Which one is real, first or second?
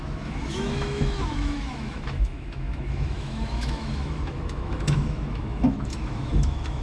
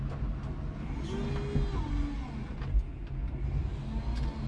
second